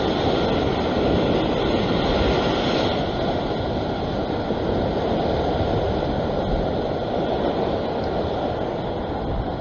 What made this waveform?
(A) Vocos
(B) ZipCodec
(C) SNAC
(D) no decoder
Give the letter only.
D